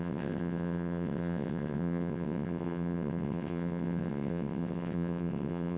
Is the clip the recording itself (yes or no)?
no